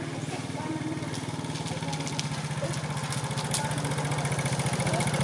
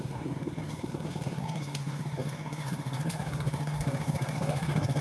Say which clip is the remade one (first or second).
second